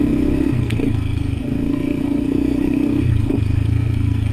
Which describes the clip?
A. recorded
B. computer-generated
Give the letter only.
B